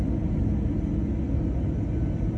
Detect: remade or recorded recorded